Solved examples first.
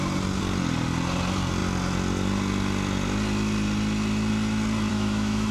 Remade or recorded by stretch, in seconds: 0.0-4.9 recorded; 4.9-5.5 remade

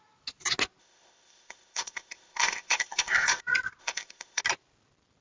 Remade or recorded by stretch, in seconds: 0.0-0.8 recorded; 0.8-3.4 remade; 3.4-3.8 recorded; 3.8-4.4 remade; 4.4-5.2 recorded

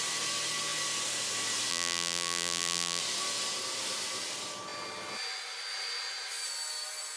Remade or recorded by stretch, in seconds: 0.0-1.7 recorded; 1.7-3.0 remade; 3.0-7.2 recorded

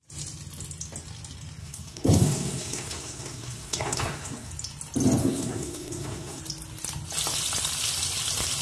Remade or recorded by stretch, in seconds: 0.0-1.6 recorded; 1.6-4.5 remade; 4.5-5.2 recorded; 5.2-6.4 remade; 6.4-8.6 recorded

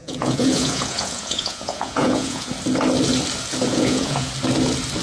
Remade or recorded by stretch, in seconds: 0.0-2.5 remade; 2.5-3.7 recorded; 3.7-4.3 remade; 4.3-5.0 recorded